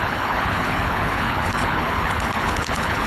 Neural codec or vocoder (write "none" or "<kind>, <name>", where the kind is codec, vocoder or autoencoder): codec, HILCodec